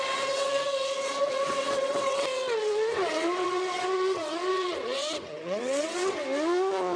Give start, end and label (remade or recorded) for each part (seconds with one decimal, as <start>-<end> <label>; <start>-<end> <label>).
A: 0.0-6.2 remade; 6.2-7.0 recorded